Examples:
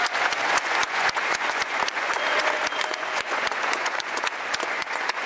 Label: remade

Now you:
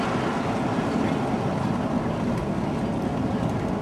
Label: recorded